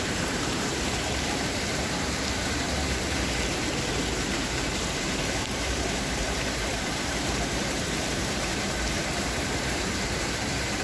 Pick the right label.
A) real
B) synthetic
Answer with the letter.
B